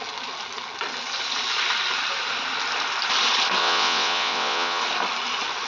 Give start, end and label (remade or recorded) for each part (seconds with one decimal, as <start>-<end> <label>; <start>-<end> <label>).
0.0-3.6 recorded; 3.6-4.8 remade; 4.8-5.7 recorded